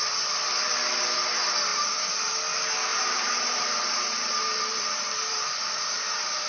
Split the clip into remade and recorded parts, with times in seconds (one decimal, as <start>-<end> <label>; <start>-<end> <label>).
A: 0.0-1.7 recorded; 1.7-2.3 remade; 2.3-2.9 recorded; 2.9-6.5 remade